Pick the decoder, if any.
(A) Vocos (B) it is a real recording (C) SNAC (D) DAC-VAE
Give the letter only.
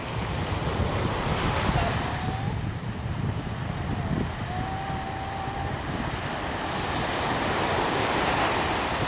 B